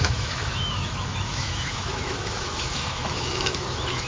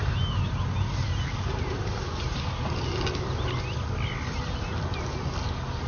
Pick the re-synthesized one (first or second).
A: first